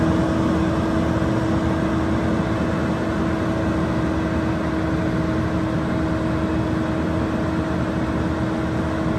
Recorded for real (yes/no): yes